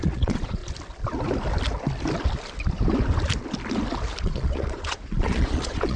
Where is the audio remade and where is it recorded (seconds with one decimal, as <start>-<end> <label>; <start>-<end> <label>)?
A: 0.0-0.6 remade; 0.6-4.2 recorded; 4.2-6.0 remade